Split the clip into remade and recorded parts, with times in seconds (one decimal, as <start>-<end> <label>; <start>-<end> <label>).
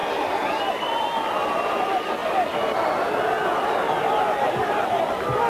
0.0-5.5 recorded